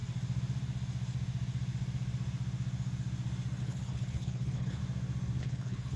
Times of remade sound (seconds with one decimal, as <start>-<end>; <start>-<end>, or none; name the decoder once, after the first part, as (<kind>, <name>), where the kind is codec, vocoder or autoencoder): 3.6-4.8 (codec, HILCodec); 5.4-6.0